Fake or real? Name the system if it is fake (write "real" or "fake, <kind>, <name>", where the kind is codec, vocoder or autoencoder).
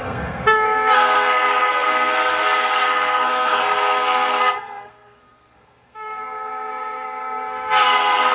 fake, codec, SNAC